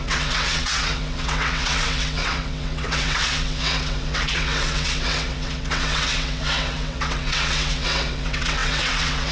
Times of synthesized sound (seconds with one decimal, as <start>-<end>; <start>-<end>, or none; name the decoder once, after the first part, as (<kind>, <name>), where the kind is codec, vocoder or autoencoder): 0.0-9.3 (vocoder, WaveNeXt)